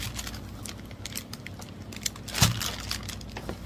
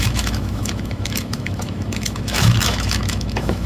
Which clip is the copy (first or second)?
second